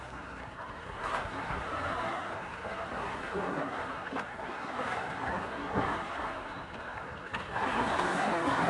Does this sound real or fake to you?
fake